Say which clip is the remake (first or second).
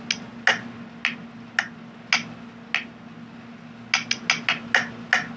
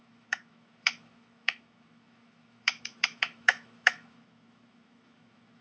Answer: second